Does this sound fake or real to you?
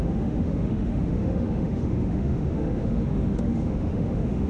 fake